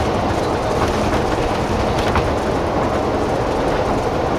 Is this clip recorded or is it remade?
recorded